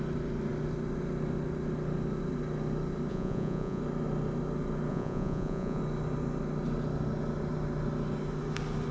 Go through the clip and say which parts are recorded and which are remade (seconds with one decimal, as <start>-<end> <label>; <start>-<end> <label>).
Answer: 0.0-3.1 recorded; 3.1-3.8 remade; 3.8-4.9 recorded; 4.9-5.8 remade; 5.8-8.9 recorded